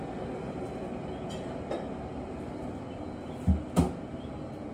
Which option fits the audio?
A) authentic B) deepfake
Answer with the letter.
A